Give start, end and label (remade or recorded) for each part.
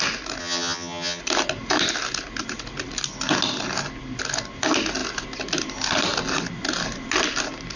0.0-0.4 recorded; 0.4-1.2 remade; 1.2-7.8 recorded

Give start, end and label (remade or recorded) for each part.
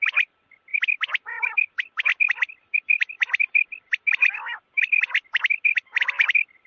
0.0-6.7 recorded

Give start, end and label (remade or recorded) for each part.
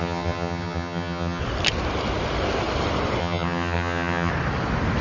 0.0-1.4 remade; 1.4-3.2 recorded; 3.2-4.3 remade; 4.3-5.0 recorded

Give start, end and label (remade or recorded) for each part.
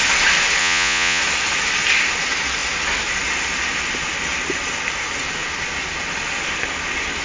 0.0-0.6 recorded; 0.6-1.2 remade; 1.2-7.2 recorded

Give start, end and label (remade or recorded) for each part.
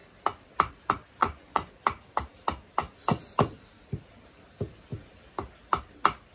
0.0-1.2 recorded; 1.2-1.7 remade; 1.7-6.3 recorded